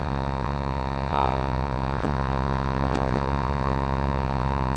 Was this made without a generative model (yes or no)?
no